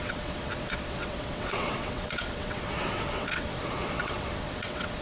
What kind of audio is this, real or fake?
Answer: fake